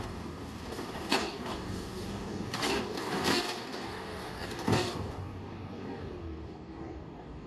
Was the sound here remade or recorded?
remade